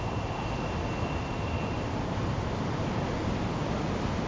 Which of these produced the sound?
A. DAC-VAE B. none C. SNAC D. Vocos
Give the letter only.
B